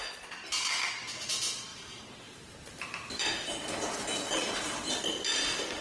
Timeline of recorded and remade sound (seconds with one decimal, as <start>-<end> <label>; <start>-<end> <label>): 0.0-1.7 recorded; 1.7-5.0 remade; 5.0-5.8 recorded